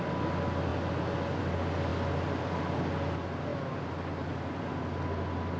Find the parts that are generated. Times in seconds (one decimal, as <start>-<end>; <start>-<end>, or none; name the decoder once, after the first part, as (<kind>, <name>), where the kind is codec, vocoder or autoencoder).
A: none